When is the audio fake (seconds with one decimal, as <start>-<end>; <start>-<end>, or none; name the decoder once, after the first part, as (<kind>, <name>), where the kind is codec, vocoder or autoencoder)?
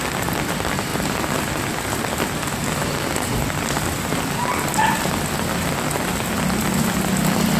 none